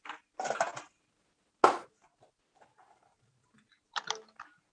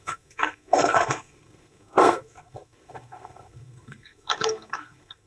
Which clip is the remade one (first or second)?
second